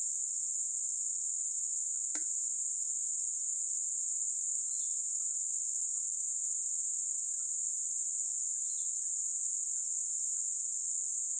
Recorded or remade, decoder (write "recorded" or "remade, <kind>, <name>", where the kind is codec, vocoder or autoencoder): recorded